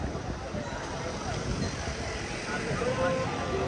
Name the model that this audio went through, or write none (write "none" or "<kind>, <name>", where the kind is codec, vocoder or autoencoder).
none